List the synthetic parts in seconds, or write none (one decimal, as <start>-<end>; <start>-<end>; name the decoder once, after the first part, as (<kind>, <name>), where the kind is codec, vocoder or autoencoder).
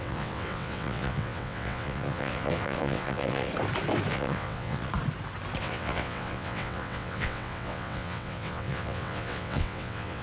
0.0-3.5 (vocoder, WaveNeXt); 4.1-4.9; 5.6-10.2